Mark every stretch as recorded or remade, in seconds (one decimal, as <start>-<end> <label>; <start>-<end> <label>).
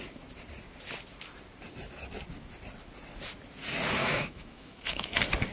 0.0-4.0 recorded; 4.0-5.1 remade; 5.1-5.5 recorded